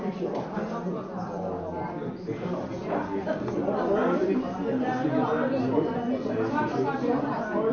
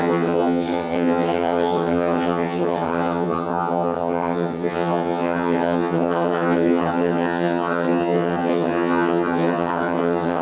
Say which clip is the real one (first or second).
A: first